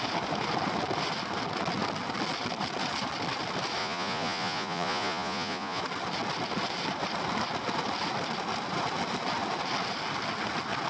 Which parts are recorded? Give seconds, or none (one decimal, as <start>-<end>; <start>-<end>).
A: 0.0-3.8; 5.8-10.9